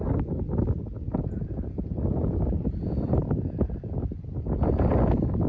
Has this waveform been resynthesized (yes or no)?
no